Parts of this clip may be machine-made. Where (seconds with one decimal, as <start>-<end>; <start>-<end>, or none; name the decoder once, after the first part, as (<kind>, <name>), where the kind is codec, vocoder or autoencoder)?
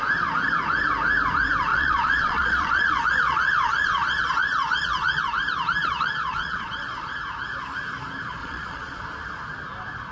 1.7-5.2 (vocoder, Vocos); 5.8-7.1; 8.4-9.0